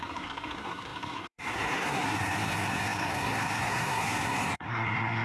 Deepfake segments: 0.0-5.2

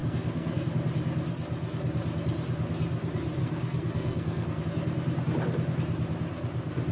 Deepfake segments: 0.0-0.7; 3.4-4.6

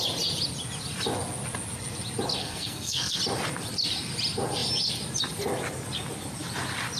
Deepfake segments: 2.4-3.2